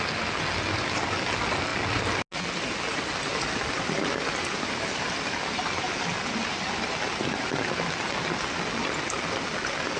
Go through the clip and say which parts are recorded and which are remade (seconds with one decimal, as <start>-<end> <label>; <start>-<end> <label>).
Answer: 0.0-10.0 recorded